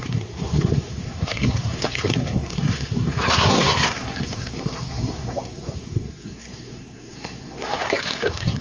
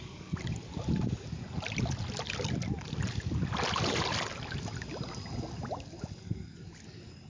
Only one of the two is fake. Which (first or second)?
first